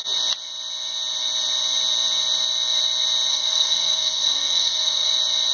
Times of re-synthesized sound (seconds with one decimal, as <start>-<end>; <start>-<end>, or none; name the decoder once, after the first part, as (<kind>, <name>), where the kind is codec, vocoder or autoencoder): 3.3-5.1 (codec, SNAC)